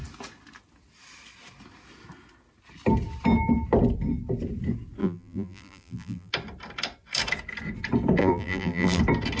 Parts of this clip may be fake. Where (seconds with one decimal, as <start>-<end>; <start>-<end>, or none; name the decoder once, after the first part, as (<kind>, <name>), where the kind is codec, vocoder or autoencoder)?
5.0-6.3 (vocoder, BigVGAN v2); 8.2-9.0